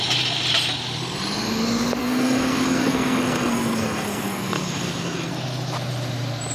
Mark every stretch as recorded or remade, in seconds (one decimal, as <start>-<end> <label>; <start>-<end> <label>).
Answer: 0.0-2.0 recorded; 2.0-5.3 remade; 5.3-6.5 recorded